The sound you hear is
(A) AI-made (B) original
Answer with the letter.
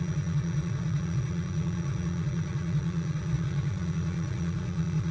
A